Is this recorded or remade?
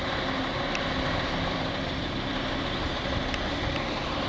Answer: recorded